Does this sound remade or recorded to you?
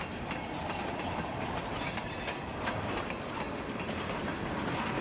recorded